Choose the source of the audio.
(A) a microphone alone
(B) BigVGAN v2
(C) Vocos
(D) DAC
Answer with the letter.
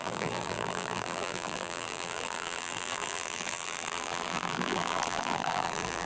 B